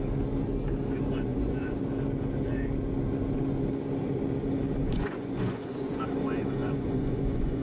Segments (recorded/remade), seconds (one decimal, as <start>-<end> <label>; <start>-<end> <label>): 0.0-1.3 recorded; 1.3-1.8 remade; 1.8-4.8 recorded; 4.8-6.1 remade; 6.1-6.6 recorded; 6.6-7.6 remade